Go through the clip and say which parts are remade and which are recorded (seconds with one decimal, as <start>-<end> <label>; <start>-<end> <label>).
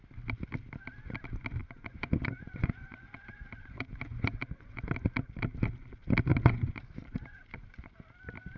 0.0-1.6 recorded; 1.6-4.8 remade; 4.8-6.3 recorded; 6.3-7.9 remade; 7.9-8.6 recorded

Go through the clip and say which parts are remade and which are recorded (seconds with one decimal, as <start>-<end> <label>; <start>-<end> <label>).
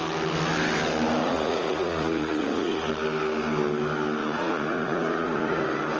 0.0-1.2 recorded; 1.2-2.9 remade; 2.9-4.2 recorded; 4.2-5.6 remade; 5.6-6.0 recorded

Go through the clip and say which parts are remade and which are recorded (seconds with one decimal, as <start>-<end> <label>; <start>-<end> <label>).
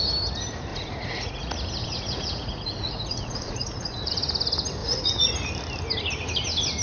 0.0-0.7 recorded; 0.7-1.4 remade; 1.4-1.8 recorded; 1.8-4.1 remade; 4.1-4.8 recorded; 4.8-5.3 remade; 5.3-6.8 recorded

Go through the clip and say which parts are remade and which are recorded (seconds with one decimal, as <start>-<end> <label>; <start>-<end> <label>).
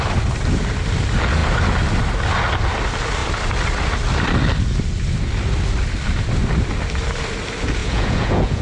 0.0-7.8 recorded; 7.8-8.6 remade